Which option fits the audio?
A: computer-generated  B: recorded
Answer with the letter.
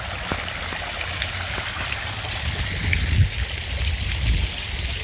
B